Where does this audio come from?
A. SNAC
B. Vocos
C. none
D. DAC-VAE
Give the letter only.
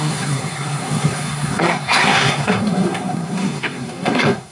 A